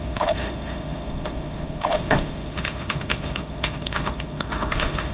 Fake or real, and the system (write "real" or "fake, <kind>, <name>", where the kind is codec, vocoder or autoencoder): fake, autoencoder, DAC-VAE